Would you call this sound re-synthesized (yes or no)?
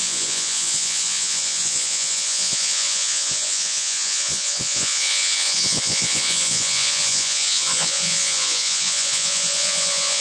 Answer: yes